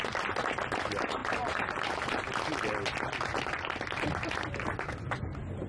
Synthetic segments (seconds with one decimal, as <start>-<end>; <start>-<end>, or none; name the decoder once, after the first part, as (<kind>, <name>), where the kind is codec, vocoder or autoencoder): none